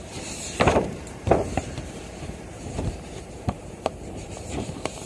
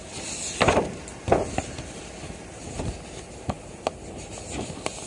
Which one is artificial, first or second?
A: first